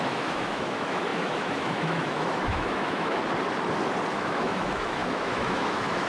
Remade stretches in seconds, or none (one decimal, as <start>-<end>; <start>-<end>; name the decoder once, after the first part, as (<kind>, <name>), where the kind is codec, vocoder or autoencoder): 0.0-3.2 (autoencoder, DAC-VAE); 4.1-6.1